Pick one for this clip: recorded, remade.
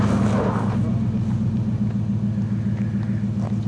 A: recorded